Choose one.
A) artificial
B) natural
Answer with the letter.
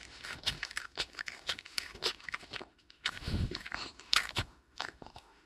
A